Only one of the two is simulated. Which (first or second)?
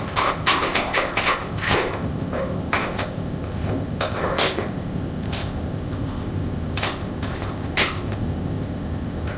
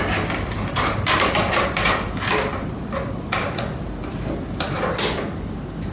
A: first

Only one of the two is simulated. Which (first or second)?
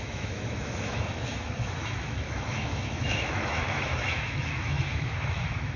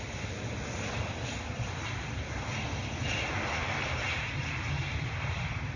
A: first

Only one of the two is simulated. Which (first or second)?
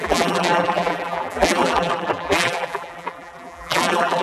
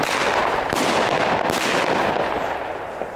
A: first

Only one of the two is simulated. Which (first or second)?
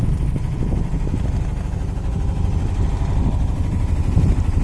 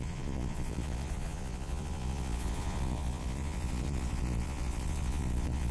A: second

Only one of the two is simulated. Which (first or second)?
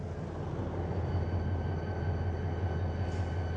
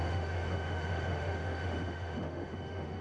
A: second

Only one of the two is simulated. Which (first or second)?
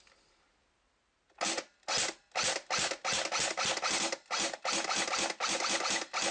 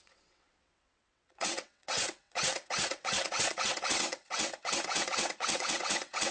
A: second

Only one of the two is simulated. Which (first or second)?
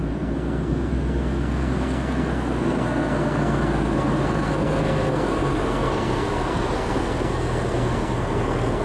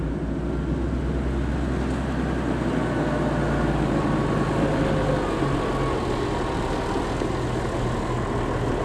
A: first